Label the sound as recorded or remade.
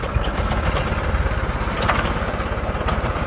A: remade